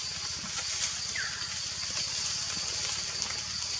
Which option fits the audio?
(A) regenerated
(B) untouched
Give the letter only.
B